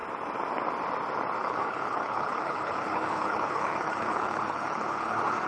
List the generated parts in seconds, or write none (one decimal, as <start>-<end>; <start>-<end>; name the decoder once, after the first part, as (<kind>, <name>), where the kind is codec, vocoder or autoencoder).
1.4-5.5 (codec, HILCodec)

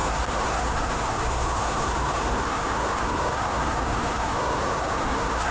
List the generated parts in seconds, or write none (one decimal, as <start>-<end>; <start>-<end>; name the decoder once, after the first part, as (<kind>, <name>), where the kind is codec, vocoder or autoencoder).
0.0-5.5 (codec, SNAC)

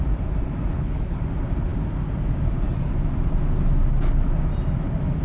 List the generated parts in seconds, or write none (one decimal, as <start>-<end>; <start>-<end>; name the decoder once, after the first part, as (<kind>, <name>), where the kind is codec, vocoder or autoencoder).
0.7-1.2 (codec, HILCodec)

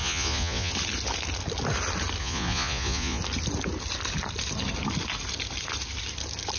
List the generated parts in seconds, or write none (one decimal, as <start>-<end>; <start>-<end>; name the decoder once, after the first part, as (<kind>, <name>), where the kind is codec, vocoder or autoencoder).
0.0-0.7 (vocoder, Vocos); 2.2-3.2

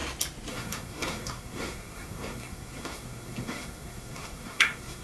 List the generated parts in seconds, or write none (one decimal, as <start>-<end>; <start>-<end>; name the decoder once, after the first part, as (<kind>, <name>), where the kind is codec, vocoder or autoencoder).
0.5-5.0 (codec, SNAC)

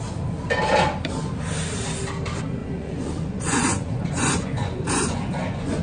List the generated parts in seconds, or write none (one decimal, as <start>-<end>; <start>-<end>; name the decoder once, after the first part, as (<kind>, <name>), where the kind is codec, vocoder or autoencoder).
2.6-5.8 (vocoder, Vocos)

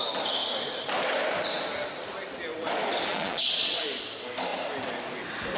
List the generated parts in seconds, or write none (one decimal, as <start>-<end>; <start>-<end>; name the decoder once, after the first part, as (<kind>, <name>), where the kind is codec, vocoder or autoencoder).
3.1-3.8 (vocoder, Vocos)

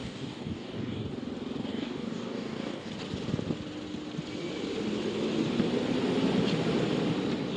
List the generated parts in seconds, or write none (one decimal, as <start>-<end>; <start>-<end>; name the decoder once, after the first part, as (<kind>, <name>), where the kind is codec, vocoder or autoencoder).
0.0-1.1 (codec, DAC); 1.7-2.9